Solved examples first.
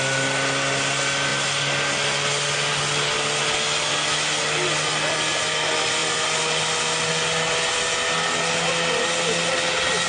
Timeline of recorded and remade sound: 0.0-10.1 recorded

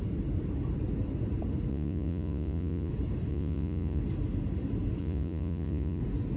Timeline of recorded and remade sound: 0.0-1.7 recorded; 1.7-2.9 remade; 2.9-3.3 recorded; 3.3-4.0 remade; 4.0-5.0 recorded; 5.0-6.0 remade; 6.0-6.4 recorded

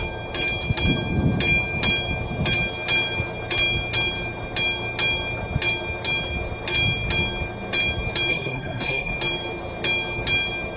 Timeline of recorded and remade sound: 0.0-8.3 recorded; 8.3-9.1 remade; 9.1-10.8 recorded

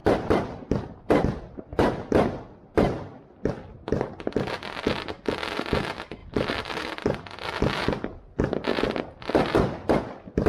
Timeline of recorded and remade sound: 0.0-1.0 remade; 1.0-1.7 recorded; 1.7-3.5 remade; 3.5-6.2 recorded; 6.2-6.7 remade; 6.7-10.5 recorded

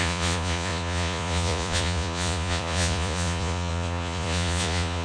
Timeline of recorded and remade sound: 0.0-5.0 remade